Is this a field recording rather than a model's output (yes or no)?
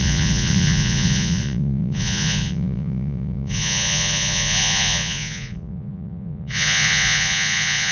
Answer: no